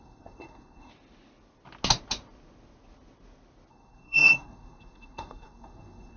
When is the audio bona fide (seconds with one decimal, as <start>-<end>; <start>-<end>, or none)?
0.9-3.7